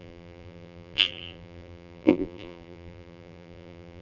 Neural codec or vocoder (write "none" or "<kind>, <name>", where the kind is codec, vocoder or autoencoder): vocoder, BigVGAN v2